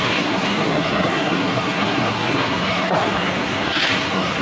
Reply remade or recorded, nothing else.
remade